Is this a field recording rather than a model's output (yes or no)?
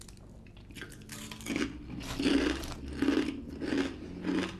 yes